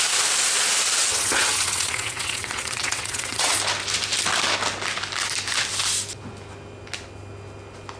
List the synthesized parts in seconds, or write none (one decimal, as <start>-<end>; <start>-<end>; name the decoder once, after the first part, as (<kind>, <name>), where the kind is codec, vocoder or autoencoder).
1.0-3.6 (vocoder, WaveNeXt)